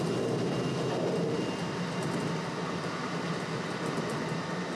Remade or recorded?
recorded